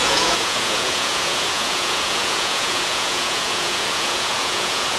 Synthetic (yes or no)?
yes